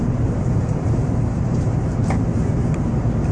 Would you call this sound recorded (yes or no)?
no